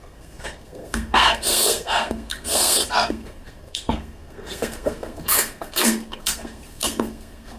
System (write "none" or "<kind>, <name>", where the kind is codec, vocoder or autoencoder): codec, SNAC